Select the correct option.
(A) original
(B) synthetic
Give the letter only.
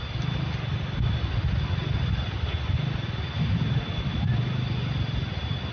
A